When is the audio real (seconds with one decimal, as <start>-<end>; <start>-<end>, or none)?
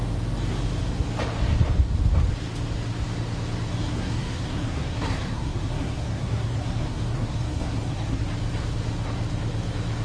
0.0-3.8; 8.2-10.0